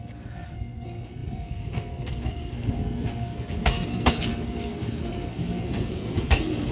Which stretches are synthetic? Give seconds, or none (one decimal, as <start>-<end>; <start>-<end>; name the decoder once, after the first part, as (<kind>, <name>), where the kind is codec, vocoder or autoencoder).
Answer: 0.0-6.7 (codec, SNAC)